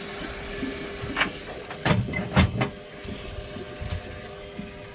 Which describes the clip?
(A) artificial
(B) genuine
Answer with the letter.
B